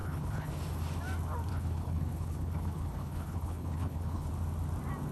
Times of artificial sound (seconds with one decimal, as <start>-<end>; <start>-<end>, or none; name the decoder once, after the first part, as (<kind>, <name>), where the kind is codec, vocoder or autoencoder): 0.0-0.5 (codec, HILCodec); 1.5-4.3